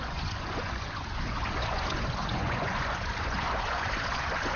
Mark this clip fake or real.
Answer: fake